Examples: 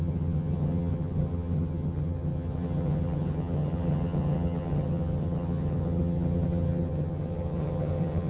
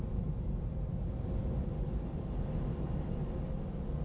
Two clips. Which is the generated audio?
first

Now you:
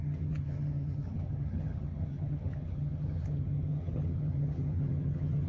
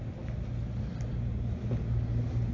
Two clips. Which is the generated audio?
first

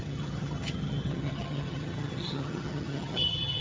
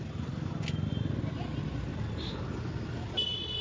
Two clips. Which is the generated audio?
first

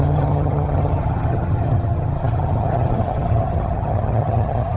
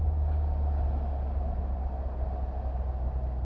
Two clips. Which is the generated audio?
first